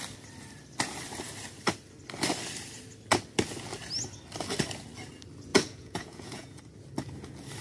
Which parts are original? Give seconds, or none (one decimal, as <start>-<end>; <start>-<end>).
0.0-5.5; 6.6-7.6